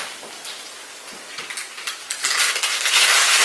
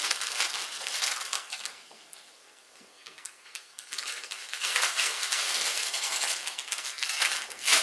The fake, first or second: second